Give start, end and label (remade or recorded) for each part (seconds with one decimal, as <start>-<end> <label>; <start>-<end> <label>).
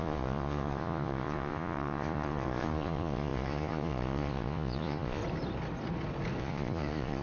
0.0-5.2 remade; 5.2-6.4 recorded; 6.4-7.2 remade